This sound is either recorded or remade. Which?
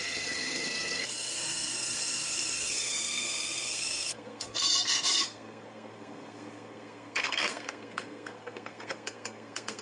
remade